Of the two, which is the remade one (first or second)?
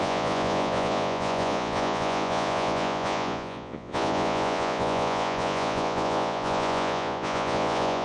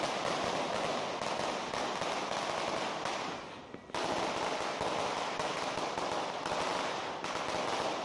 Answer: first